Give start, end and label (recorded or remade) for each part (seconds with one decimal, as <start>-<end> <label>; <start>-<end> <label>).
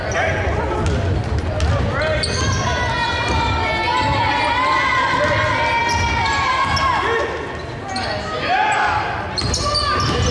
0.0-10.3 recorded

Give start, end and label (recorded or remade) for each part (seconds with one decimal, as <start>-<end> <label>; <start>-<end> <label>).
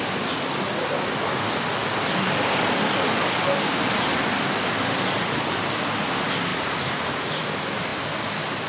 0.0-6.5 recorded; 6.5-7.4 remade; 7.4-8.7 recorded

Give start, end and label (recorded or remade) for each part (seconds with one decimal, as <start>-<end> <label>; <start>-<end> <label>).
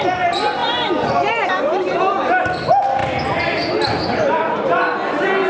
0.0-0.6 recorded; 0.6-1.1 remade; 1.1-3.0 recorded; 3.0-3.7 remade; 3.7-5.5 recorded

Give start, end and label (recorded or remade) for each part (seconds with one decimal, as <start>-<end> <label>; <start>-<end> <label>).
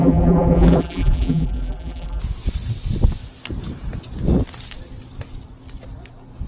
0.0-2.2 remade; 2.2-6.5 recorded